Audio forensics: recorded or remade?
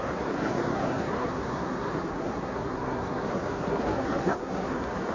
remade